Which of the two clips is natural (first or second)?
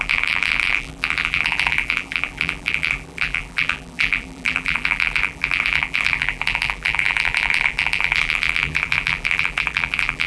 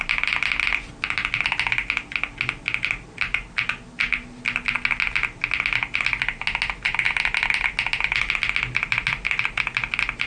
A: second